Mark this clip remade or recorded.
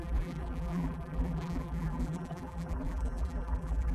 remade